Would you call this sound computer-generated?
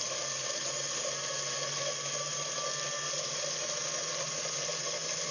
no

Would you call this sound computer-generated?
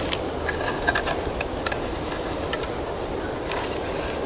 no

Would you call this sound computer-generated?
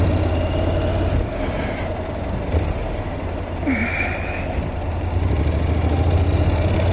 no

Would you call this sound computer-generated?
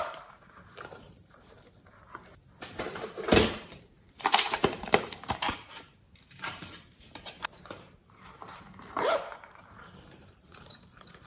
yes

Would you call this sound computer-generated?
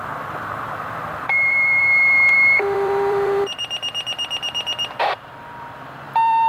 yes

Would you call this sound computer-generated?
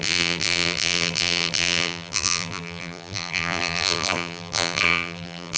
yes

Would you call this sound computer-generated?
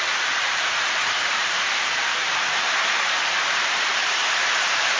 yes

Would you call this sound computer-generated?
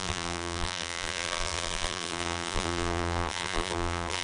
yes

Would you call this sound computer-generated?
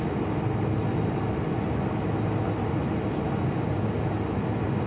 no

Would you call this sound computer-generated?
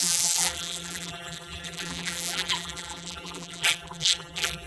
yes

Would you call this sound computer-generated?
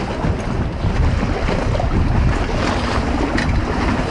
no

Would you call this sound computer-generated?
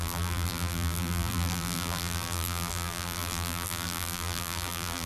yes